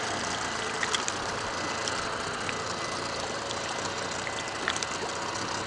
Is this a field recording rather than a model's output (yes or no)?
yes